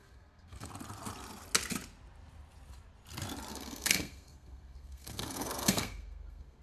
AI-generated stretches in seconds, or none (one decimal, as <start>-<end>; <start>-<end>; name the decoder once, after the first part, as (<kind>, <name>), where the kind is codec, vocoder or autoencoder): 0.0-0.7 (codec, SNAC); 3.5-6.6